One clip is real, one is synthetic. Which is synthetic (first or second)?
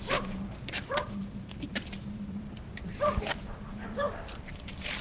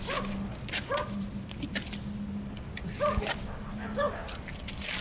first